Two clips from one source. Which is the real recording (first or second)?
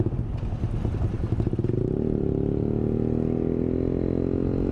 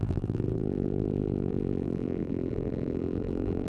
first